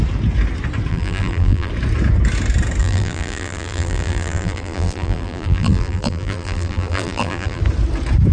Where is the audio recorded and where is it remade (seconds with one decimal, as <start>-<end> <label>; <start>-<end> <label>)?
0.0-0.9 recorded; 0.9-1.7 remade; 1.7-2.8 recorded; 2.8-7.6 remade; 7.6-8.3 recorded